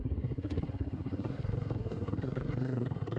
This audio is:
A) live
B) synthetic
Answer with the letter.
B